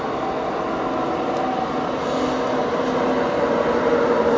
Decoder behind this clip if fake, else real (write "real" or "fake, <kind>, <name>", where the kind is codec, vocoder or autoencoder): real